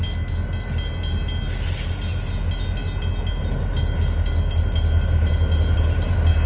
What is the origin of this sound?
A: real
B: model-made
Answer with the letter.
A